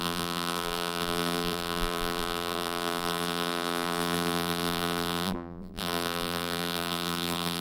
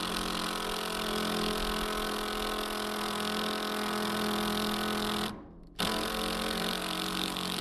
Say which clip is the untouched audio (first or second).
second